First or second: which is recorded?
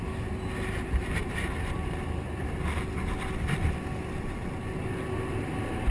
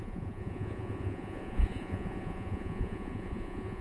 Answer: first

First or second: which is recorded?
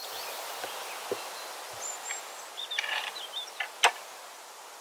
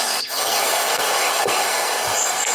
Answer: first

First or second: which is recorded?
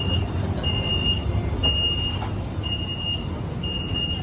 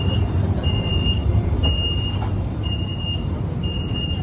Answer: first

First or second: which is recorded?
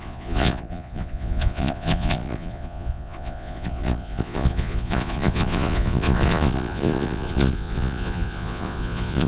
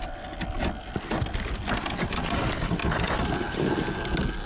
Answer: second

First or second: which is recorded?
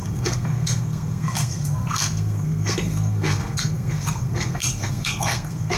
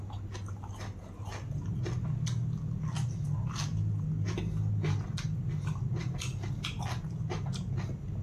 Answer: second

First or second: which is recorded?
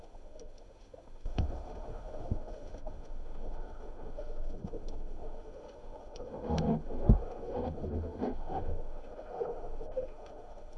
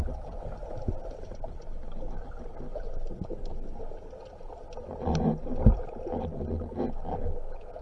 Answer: second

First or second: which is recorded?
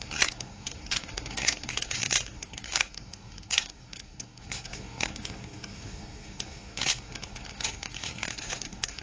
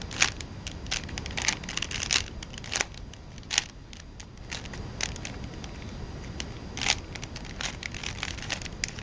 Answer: second